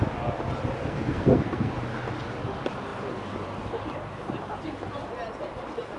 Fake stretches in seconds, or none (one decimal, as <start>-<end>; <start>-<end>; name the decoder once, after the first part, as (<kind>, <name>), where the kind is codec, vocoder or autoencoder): 0.8-1.7 (codec, SNAC)